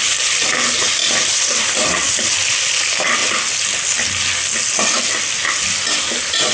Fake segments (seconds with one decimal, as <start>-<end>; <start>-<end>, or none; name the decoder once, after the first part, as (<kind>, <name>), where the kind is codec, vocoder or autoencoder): none